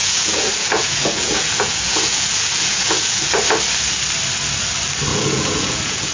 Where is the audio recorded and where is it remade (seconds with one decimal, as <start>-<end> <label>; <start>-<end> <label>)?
0.0-3.3 remade; 3.3-5.1 recorded; 5.1-6.1 remade

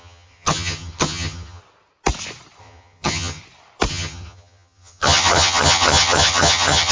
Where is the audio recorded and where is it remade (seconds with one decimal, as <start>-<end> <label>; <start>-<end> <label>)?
0.0-1.6 remade; 1.6-2.6 recorded; 2.6-3.4 remade; 3.4-3.9 recorded; 3.9-6.9 remade

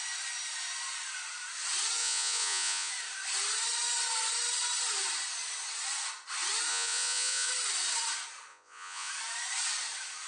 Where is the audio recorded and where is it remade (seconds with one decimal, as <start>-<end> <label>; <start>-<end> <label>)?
0.0-2.0 recorded; 2.0-2.9 remade; 2.9-6.7 recorded; 6.7-7.5 remade; 7.5-8.5 recorded; 8.5-9.1 remade; 9.1-10.3 recorded